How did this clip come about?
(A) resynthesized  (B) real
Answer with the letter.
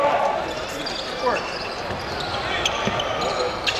B